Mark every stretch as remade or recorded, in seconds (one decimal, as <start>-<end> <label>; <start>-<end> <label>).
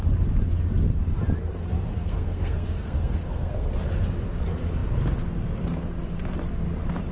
0.0-1.9 recorded; 1.9-3.7 remade; 3.7-7.1 recorded